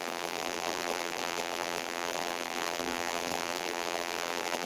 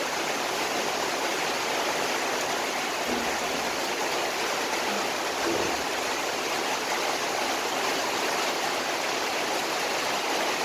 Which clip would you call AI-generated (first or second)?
first